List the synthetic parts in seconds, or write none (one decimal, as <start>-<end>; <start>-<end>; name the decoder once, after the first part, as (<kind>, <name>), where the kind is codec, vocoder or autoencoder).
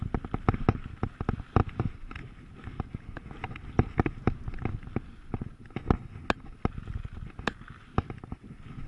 none